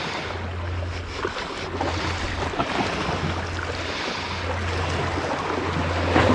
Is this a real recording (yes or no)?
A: yes